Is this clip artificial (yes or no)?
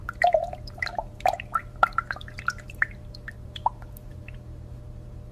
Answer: yes